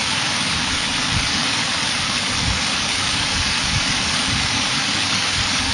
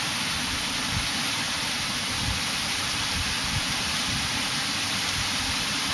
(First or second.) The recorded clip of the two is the second